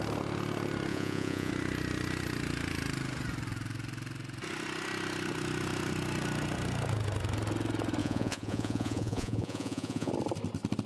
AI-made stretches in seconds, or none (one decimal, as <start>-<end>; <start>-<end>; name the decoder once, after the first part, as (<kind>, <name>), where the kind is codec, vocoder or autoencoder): 0.9-1.5 (vocoder, Vocos); 8.0-10.1